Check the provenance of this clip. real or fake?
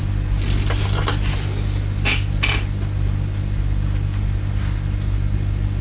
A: real